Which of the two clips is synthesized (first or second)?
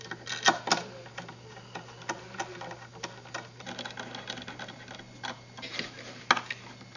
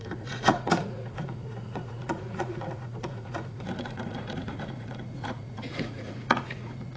second